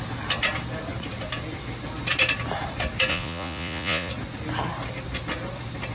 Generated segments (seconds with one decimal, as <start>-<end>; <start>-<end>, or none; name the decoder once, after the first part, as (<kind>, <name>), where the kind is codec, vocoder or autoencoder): 3.1-4.1 (vocoder, Vocos)